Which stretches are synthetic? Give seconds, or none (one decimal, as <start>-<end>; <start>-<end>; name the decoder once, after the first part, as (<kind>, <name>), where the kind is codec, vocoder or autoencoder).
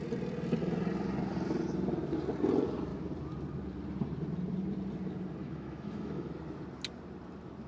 5.4-6.3 (autoencoder, DAC-VAE)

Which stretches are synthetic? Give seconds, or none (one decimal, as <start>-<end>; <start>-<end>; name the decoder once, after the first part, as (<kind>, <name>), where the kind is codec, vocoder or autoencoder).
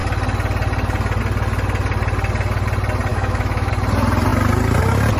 3.1-3.7 (autoencoder, DAC-VAE)